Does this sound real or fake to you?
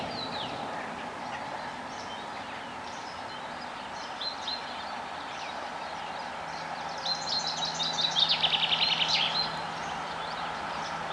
real